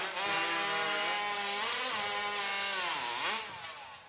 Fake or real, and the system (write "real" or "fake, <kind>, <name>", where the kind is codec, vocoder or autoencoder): real